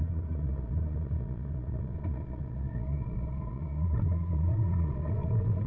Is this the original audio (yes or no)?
no